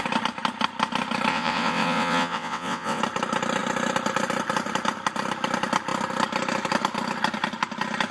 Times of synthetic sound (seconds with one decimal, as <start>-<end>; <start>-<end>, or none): 1.3-3.0